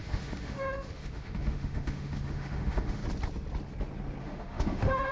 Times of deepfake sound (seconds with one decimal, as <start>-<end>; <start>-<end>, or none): 0.0-3.0; 4.2-5.1